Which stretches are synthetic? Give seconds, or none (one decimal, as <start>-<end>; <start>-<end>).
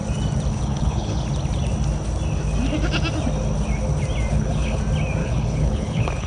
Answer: 0.5-1.2; 4.3-4.8; 5.2-6.3